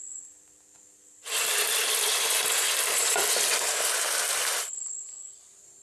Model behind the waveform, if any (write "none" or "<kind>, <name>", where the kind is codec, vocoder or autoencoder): none